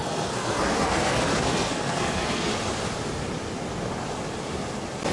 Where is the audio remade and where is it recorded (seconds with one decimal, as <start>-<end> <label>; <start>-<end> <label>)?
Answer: 0.0-2.5 remade; 2.5-5.1 recorded